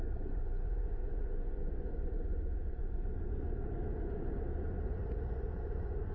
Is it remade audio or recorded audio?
remade